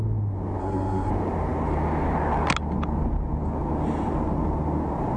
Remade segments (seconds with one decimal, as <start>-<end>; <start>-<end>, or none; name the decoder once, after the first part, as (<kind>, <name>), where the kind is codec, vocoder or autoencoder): 0.6-1.1 (codec, SNAC)